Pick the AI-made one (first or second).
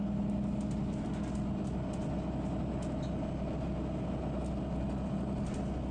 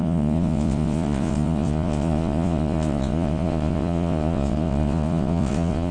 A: second